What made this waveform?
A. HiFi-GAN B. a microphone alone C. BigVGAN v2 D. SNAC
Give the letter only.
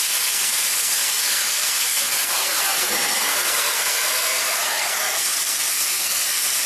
D